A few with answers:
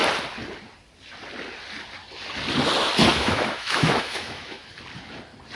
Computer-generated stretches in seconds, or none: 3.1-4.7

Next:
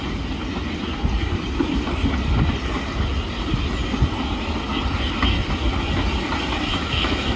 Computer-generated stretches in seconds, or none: 6.7-7.4

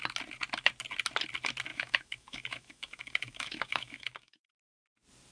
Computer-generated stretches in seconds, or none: 1.7-4.5

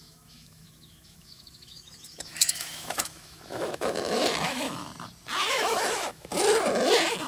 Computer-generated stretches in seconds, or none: 0.0-4.9; 5.5-6.3

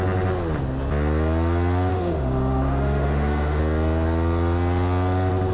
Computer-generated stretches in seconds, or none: 1.9-3.6

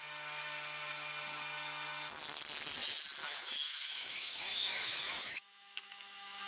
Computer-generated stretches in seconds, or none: 3.2-6.5